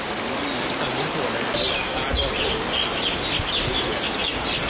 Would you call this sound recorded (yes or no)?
yes